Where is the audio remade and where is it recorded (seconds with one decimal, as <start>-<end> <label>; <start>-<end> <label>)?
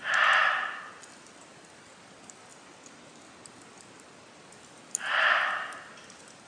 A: 0.0-6.5 recorded